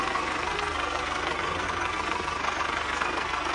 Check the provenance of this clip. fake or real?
fake